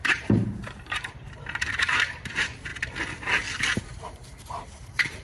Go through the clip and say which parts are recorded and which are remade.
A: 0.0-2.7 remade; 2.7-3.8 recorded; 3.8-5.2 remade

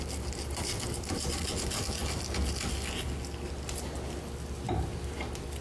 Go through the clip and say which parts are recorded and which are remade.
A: 0.0-2.0 remade; 2.0-4.7 recorded; 4.7-5.6 remade

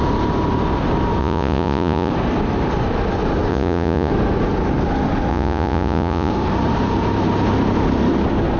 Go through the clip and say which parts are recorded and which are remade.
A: 0.0-1.2 recorded; 1.2-2.1 remade; 2.1-3.5 recorded; 3.5-4.1 remade; 4.1-5.3 recorded; 5.3-6.3 remade; 6.3-8.6 recorded

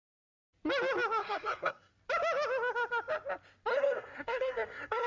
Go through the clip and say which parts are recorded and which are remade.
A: 0.0-1.2 recorded; 1.2-1.9 remade; 1.9-3.7 recorded; 3.7-5.1 remade